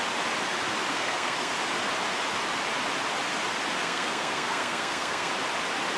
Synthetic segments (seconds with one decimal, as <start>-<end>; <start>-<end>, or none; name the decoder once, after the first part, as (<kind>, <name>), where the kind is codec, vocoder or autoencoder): 0.9-1.5 (codec, SNAC); 3.8-5.3